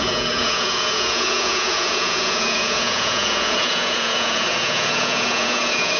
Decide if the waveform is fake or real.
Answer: fake